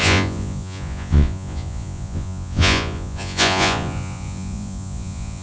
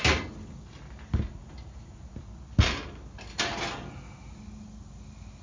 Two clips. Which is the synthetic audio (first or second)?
first